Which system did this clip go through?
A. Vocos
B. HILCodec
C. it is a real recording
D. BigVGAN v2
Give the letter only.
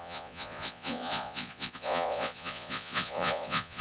A